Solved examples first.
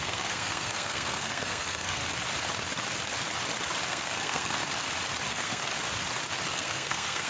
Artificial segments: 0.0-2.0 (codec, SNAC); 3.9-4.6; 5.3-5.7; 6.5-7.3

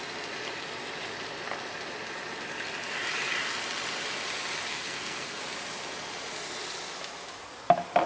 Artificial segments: 4.7-5.4 (codec, SNAC)